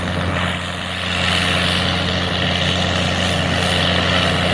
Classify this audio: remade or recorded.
recorded